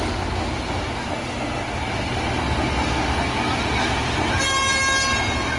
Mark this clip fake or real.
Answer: real